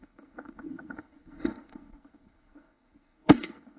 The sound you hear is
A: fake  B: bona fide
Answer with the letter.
A